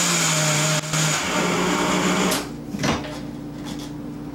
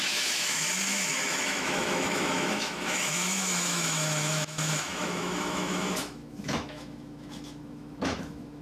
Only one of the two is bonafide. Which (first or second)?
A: first